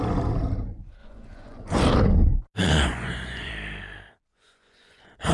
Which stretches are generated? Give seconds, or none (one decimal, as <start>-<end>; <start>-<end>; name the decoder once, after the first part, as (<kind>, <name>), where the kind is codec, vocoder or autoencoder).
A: 1.0-1.8 (vocoder, Vocos); 2.6-3.5; 4.3-5.3